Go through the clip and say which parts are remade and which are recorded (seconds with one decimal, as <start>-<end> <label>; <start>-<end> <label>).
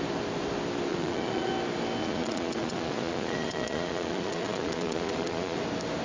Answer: 0.0-0.9 recorded; 0.9-1.5 remade; 1.5-2.0 recorded; 2.0-5.6 remade; 5.6-6.0 recorded